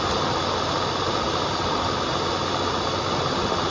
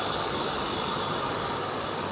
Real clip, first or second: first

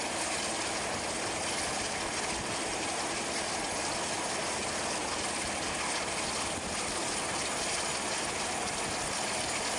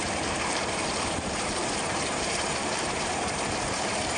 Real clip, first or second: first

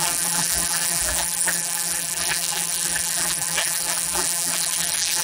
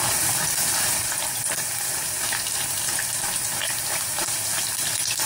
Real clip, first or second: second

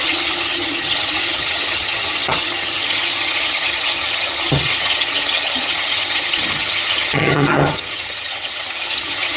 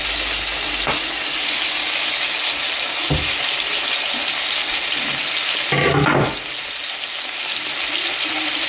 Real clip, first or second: second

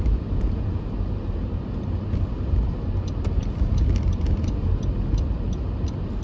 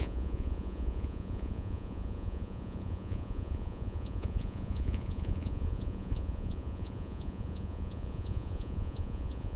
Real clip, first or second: first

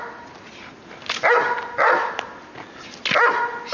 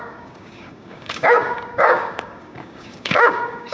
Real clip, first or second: first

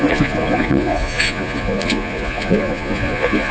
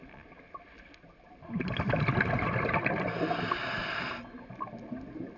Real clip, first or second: second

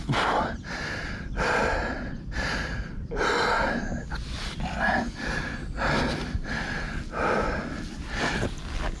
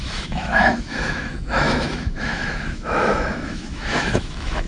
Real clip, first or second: first